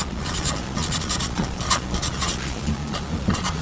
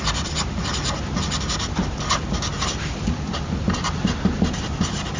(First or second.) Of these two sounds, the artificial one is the first